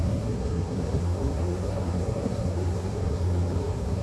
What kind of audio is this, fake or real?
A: fake